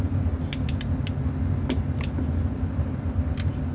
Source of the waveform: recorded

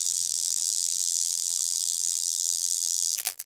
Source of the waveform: remade